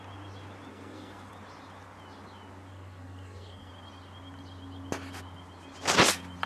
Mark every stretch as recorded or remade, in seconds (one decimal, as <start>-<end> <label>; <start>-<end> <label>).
0.0-0.7 recorded; 0.7-1.3 remade; 1.3-2.7 recorded; 2.7-3.7 remade; 3.7-6.5 recorded